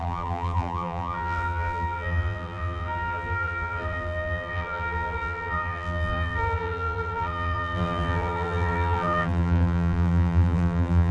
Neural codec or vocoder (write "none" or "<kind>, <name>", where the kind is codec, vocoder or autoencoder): vocoder, BigVGAN v2